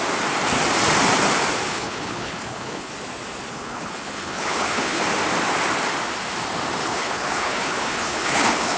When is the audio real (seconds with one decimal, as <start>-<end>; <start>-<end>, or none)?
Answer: 0.0-1.7; 2.9-3.5; 5.0-6.8